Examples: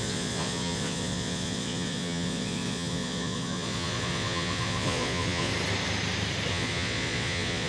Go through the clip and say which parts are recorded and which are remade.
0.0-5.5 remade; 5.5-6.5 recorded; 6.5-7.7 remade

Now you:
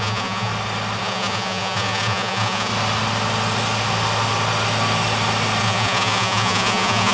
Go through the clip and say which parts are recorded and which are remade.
0.0-0.5 remade; 0.5-1.0 recorded; 1.0-2.7 remade; 2.7-5.6 recorded; 5.6-7.1 remade

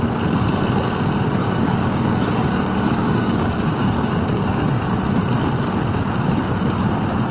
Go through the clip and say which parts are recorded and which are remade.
0.0-1.4 recorded; 1.4-4.9 remade; 4.9-7.3 recorded

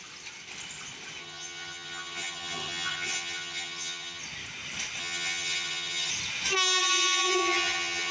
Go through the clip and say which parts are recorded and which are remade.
0.0-1.2 recorded; 1.2-4.2 remade; 4.2-5.0 recorded; 5.0-6.1 remade; 6.1-6.8 recorded; 6.8-8.1 remade

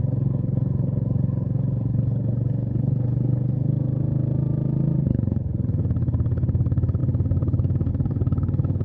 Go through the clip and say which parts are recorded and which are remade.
0.0-3.7 remade; 3.7-5.1 recorded; 5.1-8.8 remade

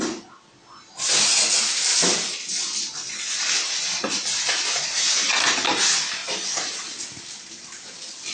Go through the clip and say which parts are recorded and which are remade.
0.0-8.3 recorded

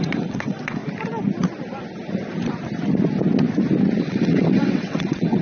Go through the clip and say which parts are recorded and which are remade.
0.0-0.8 remade; 0.8-4.0 recorded; 4.0-5.4 remade

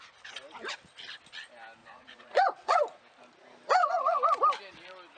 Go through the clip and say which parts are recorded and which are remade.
0.0-1.8 recorded; 1.8-3.0 remade; 3.0-3.8 recorded; 3.8-4.4 remade; 4.4-5.2 recorded